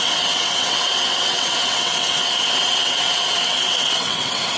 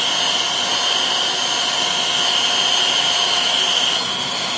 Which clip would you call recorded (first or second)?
second